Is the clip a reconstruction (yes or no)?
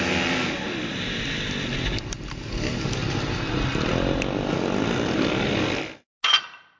no